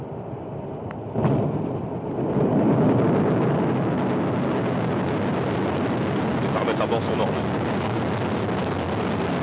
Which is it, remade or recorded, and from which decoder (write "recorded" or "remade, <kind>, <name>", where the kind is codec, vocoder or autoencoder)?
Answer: recorded